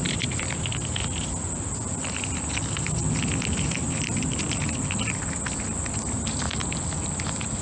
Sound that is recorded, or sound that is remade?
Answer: recorded